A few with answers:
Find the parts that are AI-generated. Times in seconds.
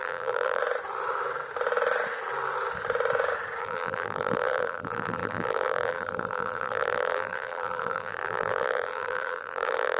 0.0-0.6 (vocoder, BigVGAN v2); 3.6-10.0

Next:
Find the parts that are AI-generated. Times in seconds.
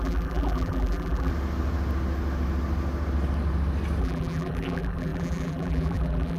0.0-1.3 (vocoder, BigVGAN v2); 4.0-6.4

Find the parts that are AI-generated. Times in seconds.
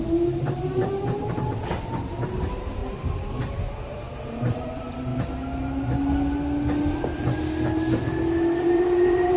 0.0-2.8 (vocoder, BigVGAN v2); 3.3-5.1; 8.6-9.4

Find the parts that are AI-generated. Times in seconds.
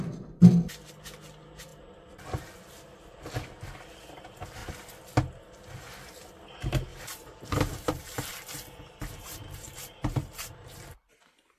6.9-11.2 (vocoder, BigVGAN v2)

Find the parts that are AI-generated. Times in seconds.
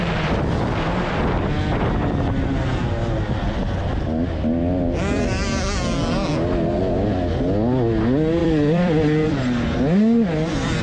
8.4-9.4 (vocoder, BigVGAN v2)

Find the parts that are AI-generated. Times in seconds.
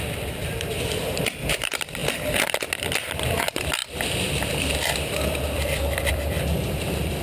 0.0-2.0 (vocoder, BigVGAN v2); 2.8-7.2